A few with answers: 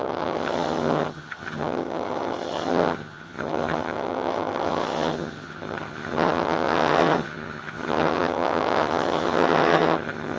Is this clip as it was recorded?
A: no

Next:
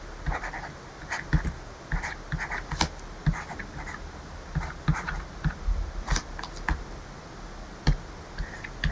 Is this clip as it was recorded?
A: yes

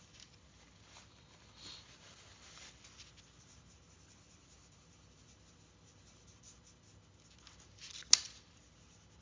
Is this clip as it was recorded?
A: yes